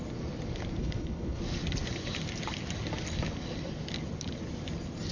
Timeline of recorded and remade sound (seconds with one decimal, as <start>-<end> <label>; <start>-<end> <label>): 0.0-0.8 recorded; 0.8-1.4 remade; 1.4-5.1 recorded